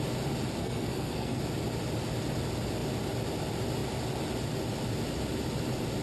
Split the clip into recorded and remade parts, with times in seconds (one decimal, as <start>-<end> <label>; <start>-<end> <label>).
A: 0.0-0.6 recorded; 0.6-1.4 remade; 1.4-6.0 recorded